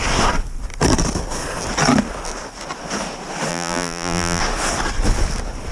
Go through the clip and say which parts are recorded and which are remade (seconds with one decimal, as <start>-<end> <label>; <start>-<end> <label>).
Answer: 0.0-3.5 recorded; 3.5-4.4 remade; 4.4-5.7 recorded